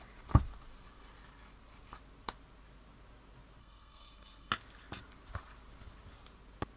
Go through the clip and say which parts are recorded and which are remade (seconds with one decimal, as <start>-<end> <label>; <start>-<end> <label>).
0.0-3.6 recorded; 3.6-4.5 remade; 4.5-6.8 recorded